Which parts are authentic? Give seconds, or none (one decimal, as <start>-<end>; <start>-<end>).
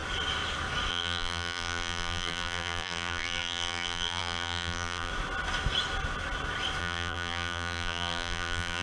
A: 0.0-0.9; 5.1-6.8